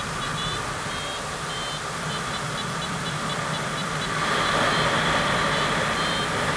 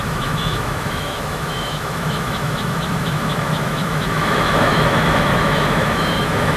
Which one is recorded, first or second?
first